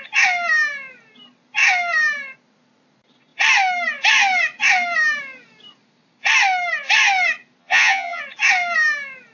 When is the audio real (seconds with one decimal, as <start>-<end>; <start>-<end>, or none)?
0.0-7.6; 8.2-9.3